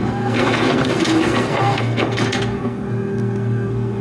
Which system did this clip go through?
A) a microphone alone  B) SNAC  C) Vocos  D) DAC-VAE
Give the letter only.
B